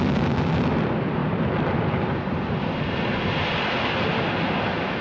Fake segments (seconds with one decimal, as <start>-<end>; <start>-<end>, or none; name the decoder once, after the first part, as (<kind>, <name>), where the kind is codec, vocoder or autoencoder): none